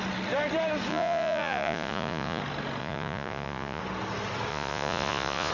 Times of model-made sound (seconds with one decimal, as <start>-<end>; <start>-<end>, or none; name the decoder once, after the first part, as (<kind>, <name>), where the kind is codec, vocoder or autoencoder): 0.9-2.4 (vocoder, Vocos); 2.8-3.8; 4.5-5.5

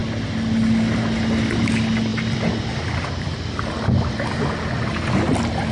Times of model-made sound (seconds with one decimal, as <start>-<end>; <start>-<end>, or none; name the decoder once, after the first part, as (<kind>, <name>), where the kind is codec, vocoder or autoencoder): none

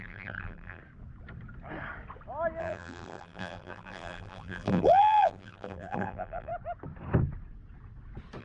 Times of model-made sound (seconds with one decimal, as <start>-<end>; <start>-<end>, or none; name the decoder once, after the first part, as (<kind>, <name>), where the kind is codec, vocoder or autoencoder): 0.0-0.8 (vocoder, BigVGAN v2); 2.6-6.5

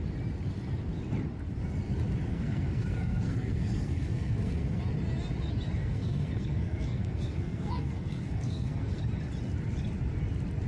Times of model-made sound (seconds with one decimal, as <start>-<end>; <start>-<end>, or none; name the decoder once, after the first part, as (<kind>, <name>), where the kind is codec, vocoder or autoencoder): 2.3-4.8 (codec, SNAC); 5.8-9.0

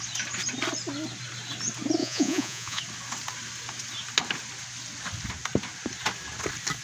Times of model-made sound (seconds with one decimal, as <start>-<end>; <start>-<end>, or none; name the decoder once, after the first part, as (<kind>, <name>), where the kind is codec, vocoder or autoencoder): 2.0-2.8 (vocoder, Vocos)

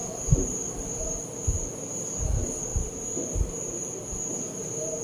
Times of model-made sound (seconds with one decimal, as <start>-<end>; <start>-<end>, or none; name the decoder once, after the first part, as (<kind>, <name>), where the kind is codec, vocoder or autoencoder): 0.0-1.0 (vocoder, BigVGAN v2); 2.7-4.3